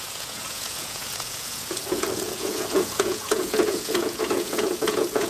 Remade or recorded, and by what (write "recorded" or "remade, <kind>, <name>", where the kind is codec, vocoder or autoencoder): remade, vocoder, Vocos